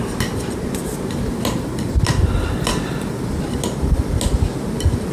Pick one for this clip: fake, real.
real